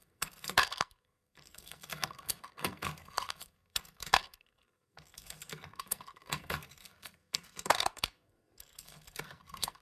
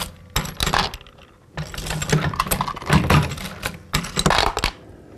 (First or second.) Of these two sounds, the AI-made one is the first